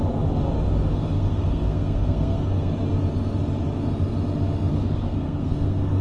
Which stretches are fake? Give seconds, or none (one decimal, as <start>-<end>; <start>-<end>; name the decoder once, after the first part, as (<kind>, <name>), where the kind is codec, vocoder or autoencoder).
0.9-2.7 (codec, SNAC); 4.7-6.0